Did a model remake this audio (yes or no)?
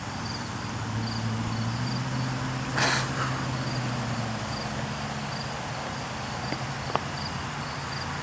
no